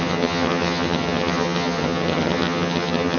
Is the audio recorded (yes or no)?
no